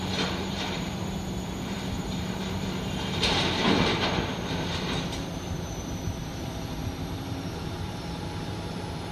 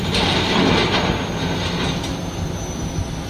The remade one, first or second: first